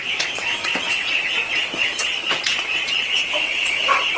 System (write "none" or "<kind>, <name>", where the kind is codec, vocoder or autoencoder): vocoder, WaveNeXt